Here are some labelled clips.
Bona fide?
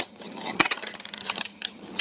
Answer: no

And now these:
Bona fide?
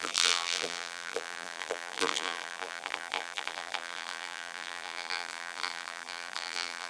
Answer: no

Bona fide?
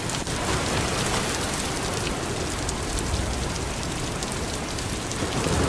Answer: yes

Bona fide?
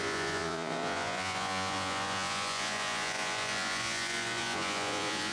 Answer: no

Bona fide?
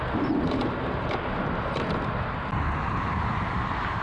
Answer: yes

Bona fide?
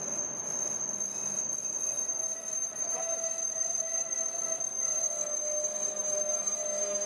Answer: yes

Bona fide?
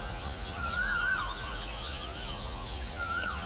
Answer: no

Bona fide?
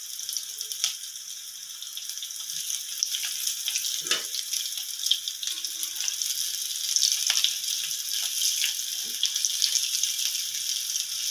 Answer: yes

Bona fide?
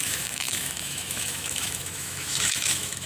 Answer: no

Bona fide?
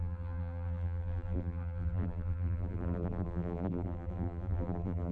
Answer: no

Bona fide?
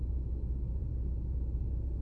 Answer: yes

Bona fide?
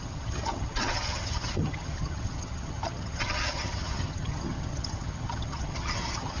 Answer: no